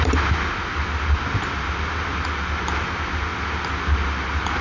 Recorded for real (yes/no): yes